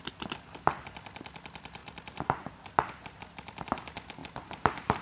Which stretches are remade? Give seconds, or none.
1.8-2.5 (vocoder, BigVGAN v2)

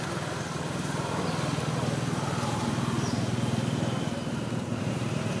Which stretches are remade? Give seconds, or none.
4.3-5.4 (vocoder, BigVGAN v2)

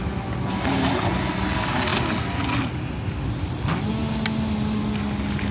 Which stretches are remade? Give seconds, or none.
none

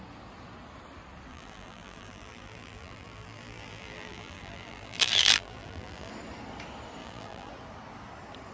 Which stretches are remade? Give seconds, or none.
1.3-6.1 (vocoder, BigVGAN v2); 7.0-7.5

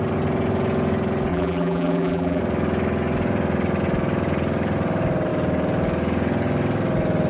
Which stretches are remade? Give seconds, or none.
1.3-2.4 (vocoder, BigVGAN v2)